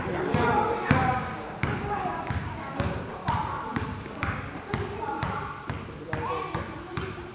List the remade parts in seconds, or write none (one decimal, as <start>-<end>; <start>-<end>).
1.0-3.1; 3.7-4.4